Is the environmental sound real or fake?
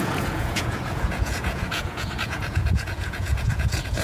fake